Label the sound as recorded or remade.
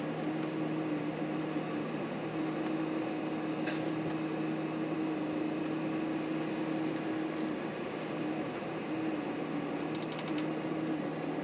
recorded